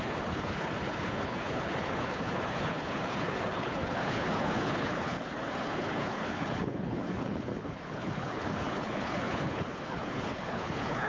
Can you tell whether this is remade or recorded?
remade